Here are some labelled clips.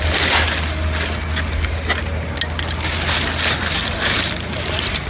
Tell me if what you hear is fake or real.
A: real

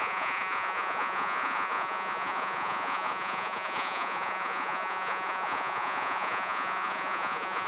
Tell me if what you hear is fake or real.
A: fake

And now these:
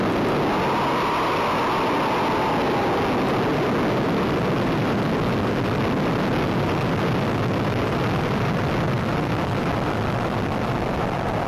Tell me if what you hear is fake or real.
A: real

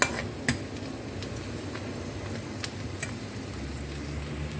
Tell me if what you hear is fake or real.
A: real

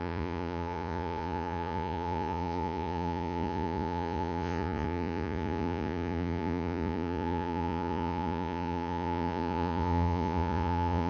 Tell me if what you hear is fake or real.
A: fake